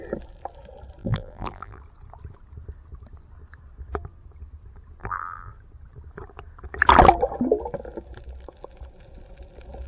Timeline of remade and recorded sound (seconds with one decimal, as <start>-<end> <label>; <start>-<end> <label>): 0.0-1.0 recorded; 1.0-1.8 remade; 1.8-5.0 recorded; 5.0-5.5 remade; 5.5-9.9 recorded